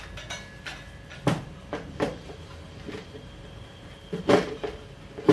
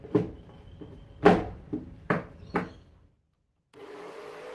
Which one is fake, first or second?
second